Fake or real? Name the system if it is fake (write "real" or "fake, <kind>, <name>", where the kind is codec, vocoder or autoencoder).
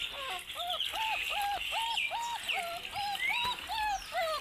real